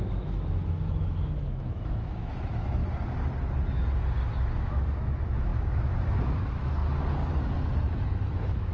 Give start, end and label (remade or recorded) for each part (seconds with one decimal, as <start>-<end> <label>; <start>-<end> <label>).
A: 0.0-2.8 remade; 2.8-4.4 recorded; 4.4-6.8 remade; 6.8-7.8 recorded; 7.8-8.7 remade